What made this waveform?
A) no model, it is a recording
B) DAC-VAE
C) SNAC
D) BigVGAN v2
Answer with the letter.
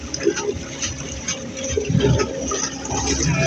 A